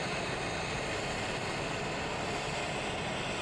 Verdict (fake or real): real